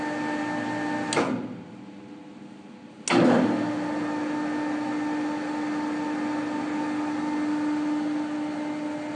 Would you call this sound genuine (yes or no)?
yes